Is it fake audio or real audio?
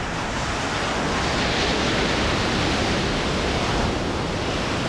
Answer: real